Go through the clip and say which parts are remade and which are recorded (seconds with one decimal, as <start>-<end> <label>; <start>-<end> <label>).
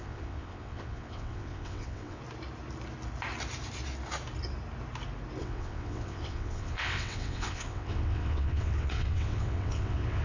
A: 0.0-2.2 remade; 2.2-5.4 recorded; 5.4-10.2 remade